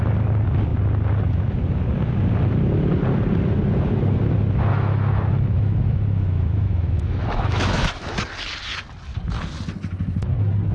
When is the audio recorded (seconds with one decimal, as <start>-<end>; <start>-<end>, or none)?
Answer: 0.0-4.7; 8.2-10.7